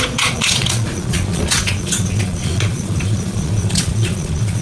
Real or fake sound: fake